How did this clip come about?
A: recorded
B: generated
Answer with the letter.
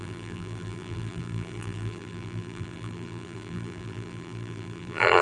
B